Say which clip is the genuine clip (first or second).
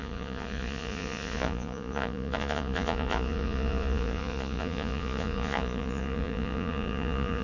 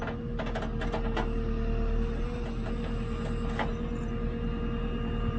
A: second